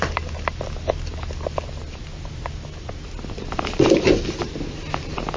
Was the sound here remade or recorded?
recorded